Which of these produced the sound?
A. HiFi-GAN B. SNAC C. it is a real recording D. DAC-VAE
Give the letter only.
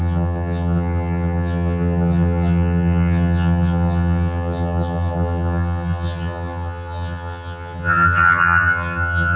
A